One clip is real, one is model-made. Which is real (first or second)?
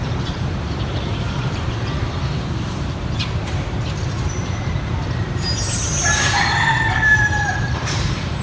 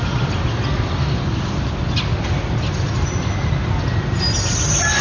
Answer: second